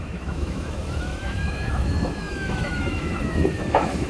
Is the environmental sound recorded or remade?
remade